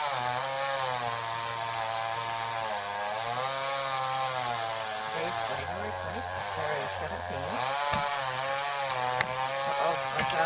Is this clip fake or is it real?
real